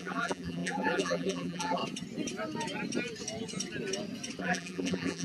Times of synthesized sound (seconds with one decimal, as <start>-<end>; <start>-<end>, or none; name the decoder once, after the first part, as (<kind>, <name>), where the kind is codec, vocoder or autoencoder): 0.0-1.8 (vocoder, BigVGAN v2); 4.4-5.2